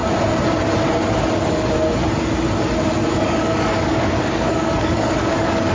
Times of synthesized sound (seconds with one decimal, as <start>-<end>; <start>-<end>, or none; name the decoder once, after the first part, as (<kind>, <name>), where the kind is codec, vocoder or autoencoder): 3.1-5.7 (codec, DAC)